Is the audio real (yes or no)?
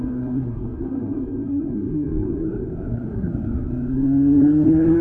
no